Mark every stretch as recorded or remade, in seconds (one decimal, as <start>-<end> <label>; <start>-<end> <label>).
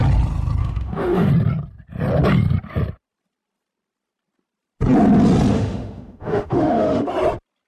0.0-0.6 recorded; 0.6-1.3 remade; 1.3-5.5 recorded; 5.5-7.1 remade; 7.1-7.7 recorded